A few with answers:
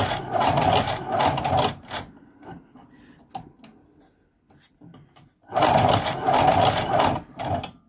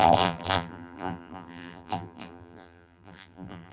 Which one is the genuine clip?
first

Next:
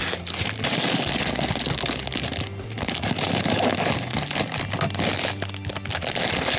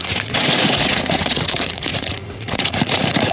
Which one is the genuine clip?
first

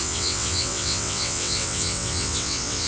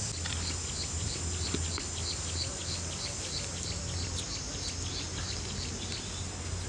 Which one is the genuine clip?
second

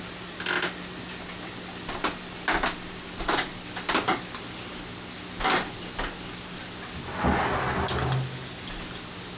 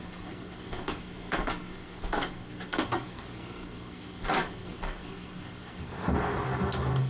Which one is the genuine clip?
first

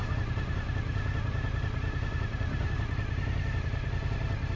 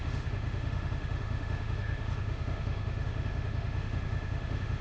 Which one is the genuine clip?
first